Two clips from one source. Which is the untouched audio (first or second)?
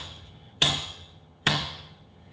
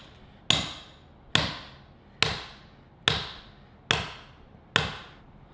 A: second